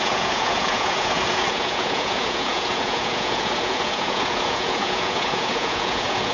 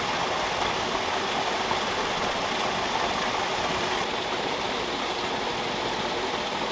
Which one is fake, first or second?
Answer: first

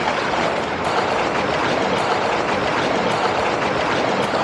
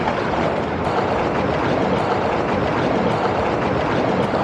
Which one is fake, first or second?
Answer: first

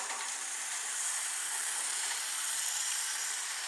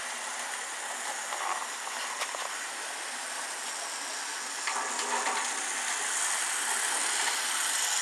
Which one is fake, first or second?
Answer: first